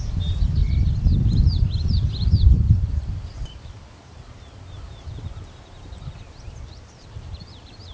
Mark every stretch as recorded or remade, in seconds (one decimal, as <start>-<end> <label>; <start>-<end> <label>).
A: 0.0-0.6 remade; 0.6-1.2 recorded; 1.2-7.9 remade